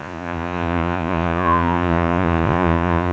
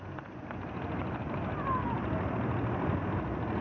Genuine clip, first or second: second